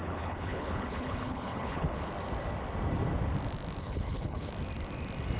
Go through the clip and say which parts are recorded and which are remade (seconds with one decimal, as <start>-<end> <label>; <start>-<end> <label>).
0.0-2.1 remade; 2.1-3.8 recorded; 3.8-4.5 remade; 4.5-5.4 recorded